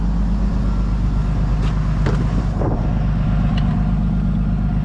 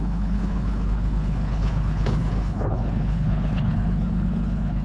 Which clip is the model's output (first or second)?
second